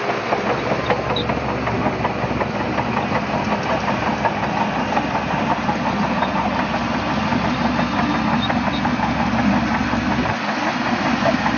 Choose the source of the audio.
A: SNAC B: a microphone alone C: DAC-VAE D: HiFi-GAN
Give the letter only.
B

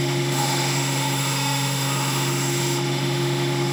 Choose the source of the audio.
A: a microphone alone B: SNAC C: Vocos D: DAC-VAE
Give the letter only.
D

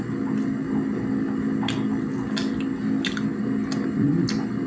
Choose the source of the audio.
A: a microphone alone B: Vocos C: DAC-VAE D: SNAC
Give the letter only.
A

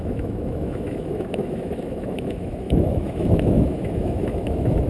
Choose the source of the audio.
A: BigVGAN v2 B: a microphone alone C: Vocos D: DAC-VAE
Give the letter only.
D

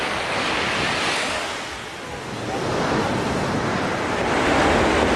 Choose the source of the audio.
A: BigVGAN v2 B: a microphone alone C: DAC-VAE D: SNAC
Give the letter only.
B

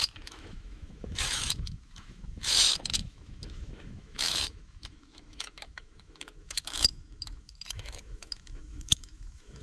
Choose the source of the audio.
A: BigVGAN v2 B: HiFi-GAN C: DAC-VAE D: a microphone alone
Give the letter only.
C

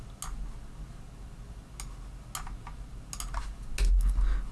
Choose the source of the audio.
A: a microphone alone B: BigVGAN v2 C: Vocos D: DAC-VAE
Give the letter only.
A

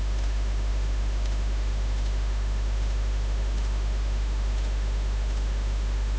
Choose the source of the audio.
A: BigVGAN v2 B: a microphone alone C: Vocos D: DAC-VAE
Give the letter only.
D